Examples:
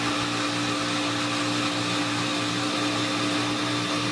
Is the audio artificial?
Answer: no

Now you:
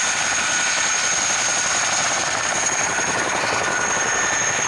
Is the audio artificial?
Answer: yes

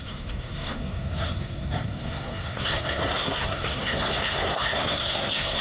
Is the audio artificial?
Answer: yes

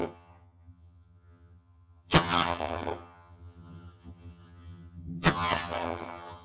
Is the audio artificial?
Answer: yes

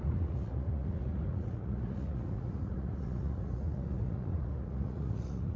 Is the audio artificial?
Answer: yes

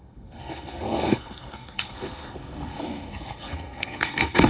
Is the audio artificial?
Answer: yes